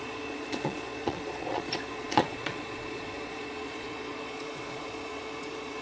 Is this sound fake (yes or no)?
yes